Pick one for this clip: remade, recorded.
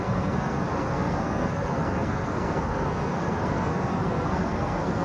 remade